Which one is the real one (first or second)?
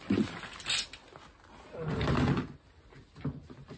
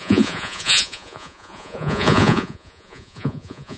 first